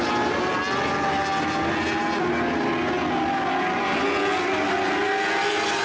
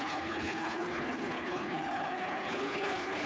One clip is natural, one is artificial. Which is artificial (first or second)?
second